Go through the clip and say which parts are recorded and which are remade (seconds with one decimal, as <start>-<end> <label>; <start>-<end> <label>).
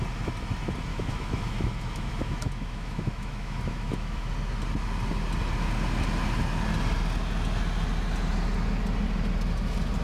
0.0-0.9 recorded; 0.9-4.3 remade; 4.3-10.0 recorded